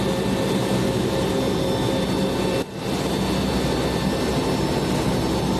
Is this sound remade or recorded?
recorded